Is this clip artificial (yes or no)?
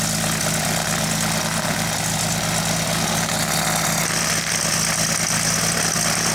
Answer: no